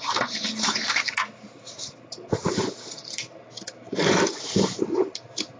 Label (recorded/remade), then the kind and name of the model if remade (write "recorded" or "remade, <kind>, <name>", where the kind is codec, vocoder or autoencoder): remade, vocoder, BigVGAN v2